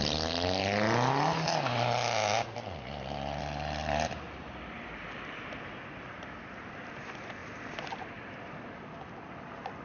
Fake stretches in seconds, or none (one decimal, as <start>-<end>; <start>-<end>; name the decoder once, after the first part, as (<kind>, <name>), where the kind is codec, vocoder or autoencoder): 0.0-0.6 (vocoder, BigVGAN v2); 3.4-9.8